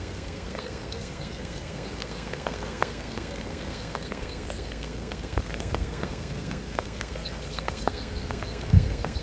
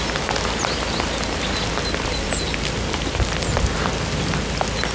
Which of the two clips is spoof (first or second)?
first